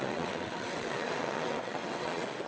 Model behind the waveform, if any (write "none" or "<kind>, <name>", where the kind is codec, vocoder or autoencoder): vocoder, WaveNeXt